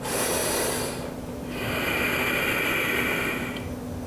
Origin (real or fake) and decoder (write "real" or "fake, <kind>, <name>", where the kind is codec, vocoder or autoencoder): real